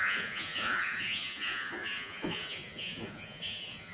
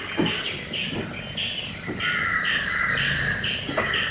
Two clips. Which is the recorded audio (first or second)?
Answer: second